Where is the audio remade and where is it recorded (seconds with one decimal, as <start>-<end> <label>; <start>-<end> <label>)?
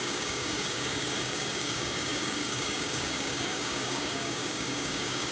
0.0-5.3 remade